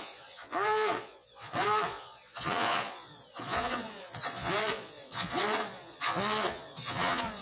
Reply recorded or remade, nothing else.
remade